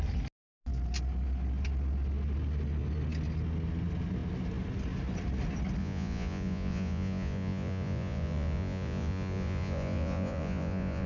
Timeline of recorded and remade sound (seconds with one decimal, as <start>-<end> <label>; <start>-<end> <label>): 0.0-5.8 recorded; 5.8-11.1 remade